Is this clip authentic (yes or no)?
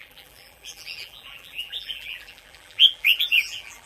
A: no